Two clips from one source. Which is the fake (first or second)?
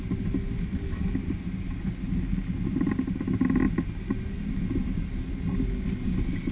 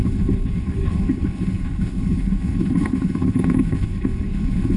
second